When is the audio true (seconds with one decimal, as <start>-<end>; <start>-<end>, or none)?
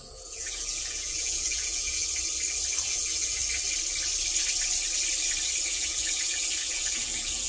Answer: 2.0-2.8; 3.4-5.6